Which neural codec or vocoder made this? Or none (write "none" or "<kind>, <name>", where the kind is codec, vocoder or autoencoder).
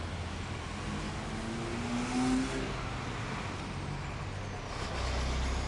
none